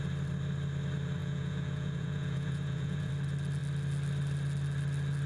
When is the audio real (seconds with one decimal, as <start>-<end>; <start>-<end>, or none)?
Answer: 0.0-1.2; 3.1-5.3